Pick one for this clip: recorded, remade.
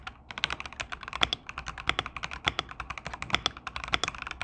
recorded